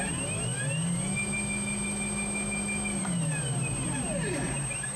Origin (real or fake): real